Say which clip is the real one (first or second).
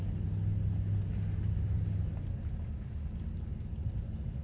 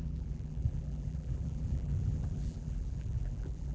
first